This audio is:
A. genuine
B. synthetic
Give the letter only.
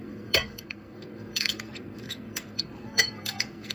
B